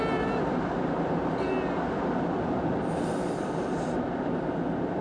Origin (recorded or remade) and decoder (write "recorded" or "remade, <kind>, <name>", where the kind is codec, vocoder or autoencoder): recorded